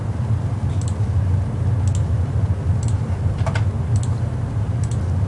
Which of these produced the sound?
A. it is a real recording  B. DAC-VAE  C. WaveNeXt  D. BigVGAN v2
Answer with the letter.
A